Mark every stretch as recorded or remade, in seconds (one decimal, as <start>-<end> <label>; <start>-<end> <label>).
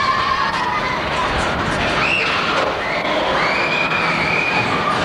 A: 0.0-5.0 recorded